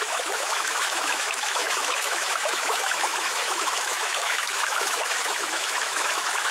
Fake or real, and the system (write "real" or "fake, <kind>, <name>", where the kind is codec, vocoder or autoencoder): fake, autoencoder, DAC-VAE